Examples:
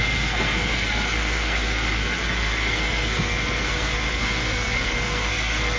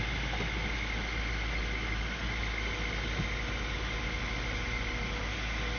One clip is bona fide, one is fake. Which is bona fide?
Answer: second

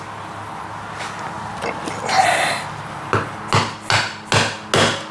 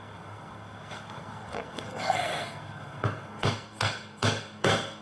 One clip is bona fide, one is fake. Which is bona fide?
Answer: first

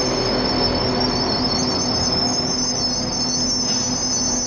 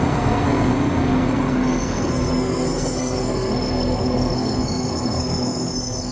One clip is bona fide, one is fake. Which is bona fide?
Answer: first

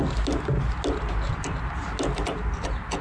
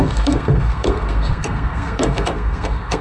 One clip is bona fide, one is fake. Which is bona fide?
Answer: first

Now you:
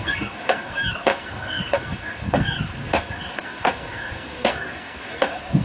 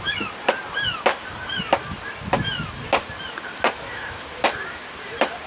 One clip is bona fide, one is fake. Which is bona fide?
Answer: second